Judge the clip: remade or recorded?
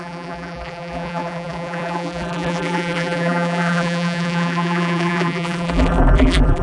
remade